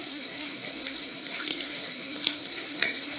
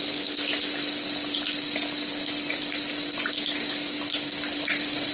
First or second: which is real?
second